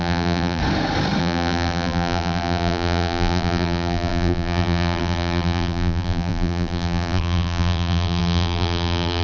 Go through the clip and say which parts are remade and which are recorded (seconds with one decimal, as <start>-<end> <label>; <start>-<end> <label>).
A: 0.0-0.6 remade; 0.6-1.2 recorded; 1.2-9.2 remade